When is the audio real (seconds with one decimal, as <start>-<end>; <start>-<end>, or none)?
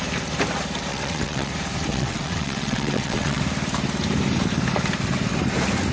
0.0-0.9; 1.5-1.9; 3.4-5.9